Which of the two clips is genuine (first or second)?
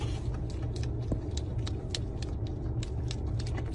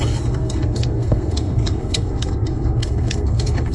first